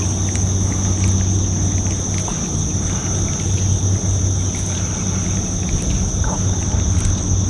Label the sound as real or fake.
real